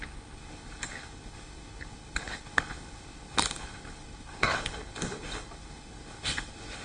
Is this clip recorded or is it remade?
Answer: remade